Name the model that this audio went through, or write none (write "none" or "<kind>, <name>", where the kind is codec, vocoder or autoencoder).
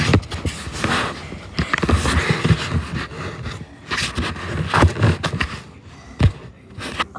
none